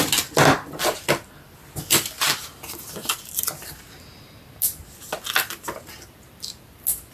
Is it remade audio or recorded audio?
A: recorded